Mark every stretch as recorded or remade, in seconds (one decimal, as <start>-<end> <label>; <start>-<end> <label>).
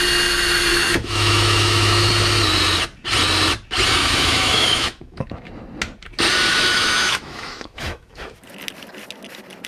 0.0-0.7 recorded; 0.7-2.1 remade; 2.1-4.0 recorded; 4.0-5.5 remade; 5.5-6.5 recorded; 6.5-8.4 remade; 8.4-9.7 recorded